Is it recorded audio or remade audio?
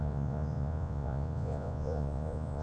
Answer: remade